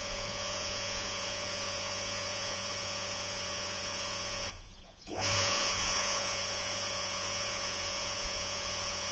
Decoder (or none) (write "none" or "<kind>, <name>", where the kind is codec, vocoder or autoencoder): vocoder, Vocos